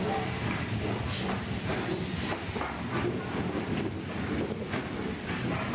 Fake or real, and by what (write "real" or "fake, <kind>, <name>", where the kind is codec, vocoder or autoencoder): real